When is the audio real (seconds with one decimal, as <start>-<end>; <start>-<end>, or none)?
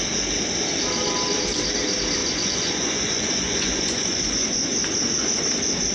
0.0-2.2; 5.4-5.9